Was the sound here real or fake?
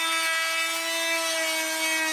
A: real